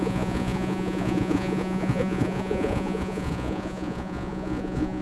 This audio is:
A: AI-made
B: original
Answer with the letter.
A